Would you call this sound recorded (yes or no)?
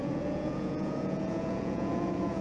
no